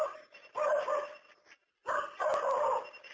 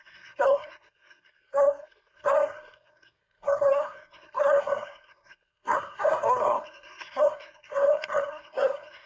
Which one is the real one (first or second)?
first